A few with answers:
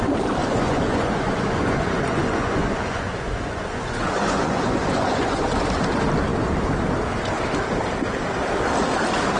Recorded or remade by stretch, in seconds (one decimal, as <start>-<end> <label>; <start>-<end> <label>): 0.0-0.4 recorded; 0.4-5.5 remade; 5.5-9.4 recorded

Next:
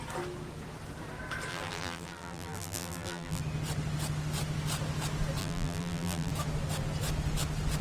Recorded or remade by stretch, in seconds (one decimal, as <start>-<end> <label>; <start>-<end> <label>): 0.0-1.5 recorded; 1.5-3.4 remade; 3.4-5.4 recorded; 5.4-6.3 remade; 6.3-7.8 recorded

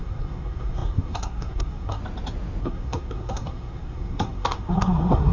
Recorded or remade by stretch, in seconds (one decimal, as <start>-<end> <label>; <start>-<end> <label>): 0.0-2.0 remade; 2.0-2.6 recorded; 2.6-5.3 remade

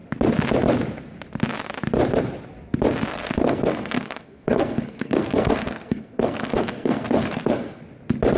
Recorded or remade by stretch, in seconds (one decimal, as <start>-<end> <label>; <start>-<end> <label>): 0.0-3.1 recorded; 3.1-7.8 remade; 7.8-8.4 recorded